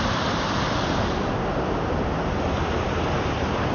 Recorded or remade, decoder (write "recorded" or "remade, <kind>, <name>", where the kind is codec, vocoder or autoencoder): recorded